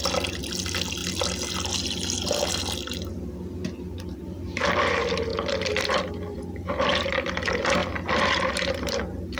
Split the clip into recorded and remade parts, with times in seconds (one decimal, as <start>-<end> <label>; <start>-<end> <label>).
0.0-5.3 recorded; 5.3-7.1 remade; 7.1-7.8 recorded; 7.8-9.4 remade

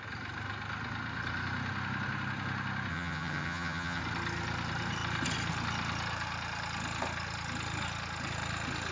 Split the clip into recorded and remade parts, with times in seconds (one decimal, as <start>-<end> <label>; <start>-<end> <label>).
0.0-2.9 recorded; 2.9-4.0 remade; 4.0-8.9 recorded

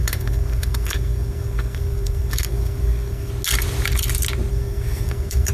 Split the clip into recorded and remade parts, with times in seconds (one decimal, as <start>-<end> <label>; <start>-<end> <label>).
0.0-3.3 remade; 3.3-4.5 recorded; 4.5-5.5 remade

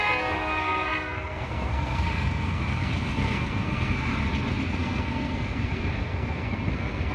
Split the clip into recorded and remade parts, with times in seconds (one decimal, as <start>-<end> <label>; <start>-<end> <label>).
0.0-4.1 remade; 4.1-4.6 recorded; 4.6-7.1 remade

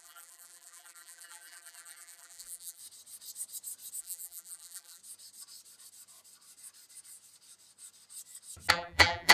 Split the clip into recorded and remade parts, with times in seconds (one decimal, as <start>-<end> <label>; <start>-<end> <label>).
0.0-2.8 remade; 2.8-4.0 recorded; 4.0-5.0 remade; 5.0-8.7 recorded; 8.7-9.3 remade

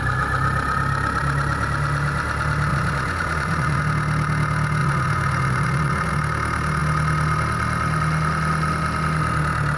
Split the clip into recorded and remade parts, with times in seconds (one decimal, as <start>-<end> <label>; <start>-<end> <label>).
0.0-2.7 recorded; 2.7-3.8 remade; 3.8-4.8 recorded; 4.8-6.1 remade; 6.1-9.8 recorded